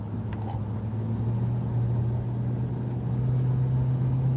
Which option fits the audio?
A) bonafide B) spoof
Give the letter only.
A